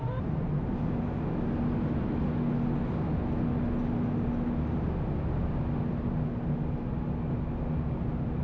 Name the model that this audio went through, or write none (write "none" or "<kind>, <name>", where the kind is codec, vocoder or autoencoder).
none